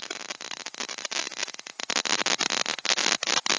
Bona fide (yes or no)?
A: yes